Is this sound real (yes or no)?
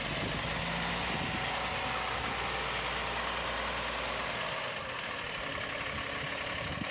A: yes